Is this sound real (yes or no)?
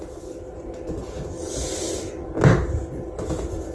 yes